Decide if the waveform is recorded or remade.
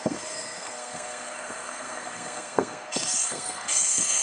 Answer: remade